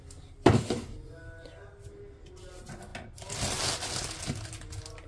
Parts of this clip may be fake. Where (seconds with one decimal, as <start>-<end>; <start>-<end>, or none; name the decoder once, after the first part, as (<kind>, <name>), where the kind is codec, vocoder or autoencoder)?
none